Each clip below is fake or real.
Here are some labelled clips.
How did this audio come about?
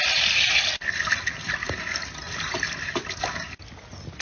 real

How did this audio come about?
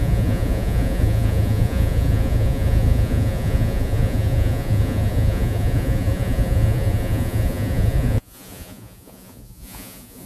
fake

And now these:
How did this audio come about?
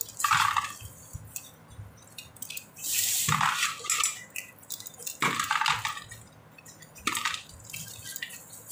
real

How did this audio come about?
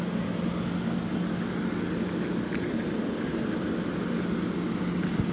real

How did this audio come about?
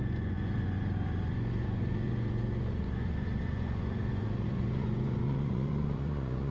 fake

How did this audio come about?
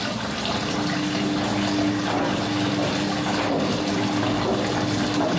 real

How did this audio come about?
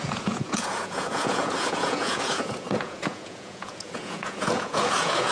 fake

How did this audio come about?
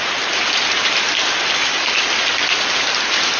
real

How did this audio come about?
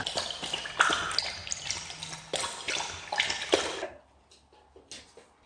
real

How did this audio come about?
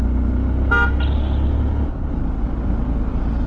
real